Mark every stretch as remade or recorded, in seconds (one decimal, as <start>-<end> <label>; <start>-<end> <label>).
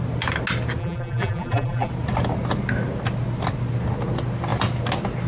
0.0-0.8 recorded; 0.8-1.9 remade; 1.9-5.3 recorded